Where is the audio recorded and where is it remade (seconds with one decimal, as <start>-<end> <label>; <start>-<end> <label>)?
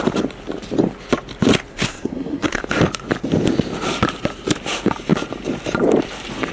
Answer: 0.0-1.7 recorded; 1.7-2.6 remade; 2.6-6.5 recorded